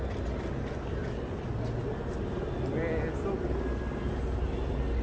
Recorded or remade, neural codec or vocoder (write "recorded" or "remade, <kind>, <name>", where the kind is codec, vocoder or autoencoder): recorded